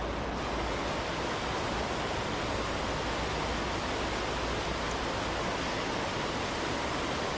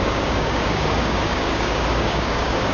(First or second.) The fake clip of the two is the second